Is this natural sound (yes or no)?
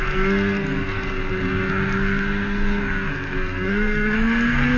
no